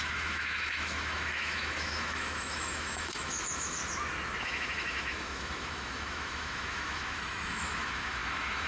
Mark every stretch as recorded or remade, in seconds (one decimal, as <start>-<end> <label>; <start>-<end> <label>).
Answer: 0.0-3.8 remade; 3.8-4.4 recorded; 4.4-8.7 remade